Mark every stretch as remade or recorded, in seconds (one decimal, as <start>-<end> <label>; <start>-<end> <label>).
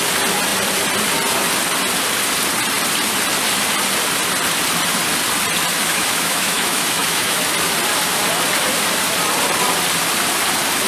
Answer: 0.0-5.7 recorded; 5.7-7.4 remade; 7.4-10.9 recorded